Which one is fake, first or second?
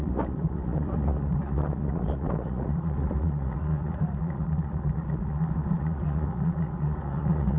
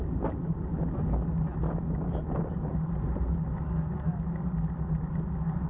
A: first